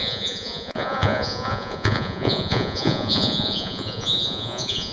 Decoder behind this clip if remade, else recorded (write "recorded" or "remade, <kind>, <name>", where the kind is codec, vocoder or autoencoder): remade, vocoder, Vocos